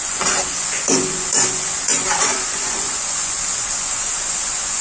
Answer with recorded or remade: remade